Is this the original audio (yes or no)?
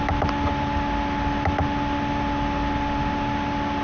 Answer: yes